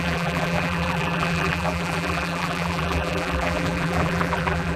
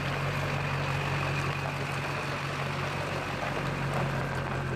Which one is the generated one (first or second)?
first